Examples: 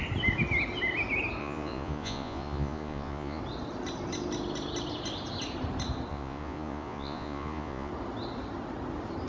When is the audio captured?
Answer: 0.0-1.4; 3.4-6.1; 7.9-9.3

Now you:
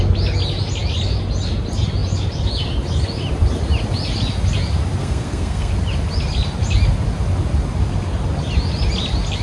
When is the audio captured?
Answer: 0.0-5.0; 5.7-9.4

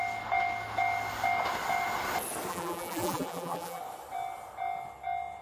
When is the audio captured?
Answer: 0.0-2.5; 3.8-5.4

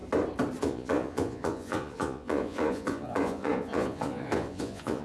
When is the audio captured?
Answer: 0.0-0.6

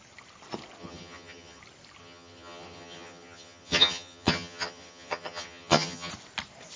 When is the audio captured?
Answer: 0.0-0.8; 1.6-2.0; 6.1-6.8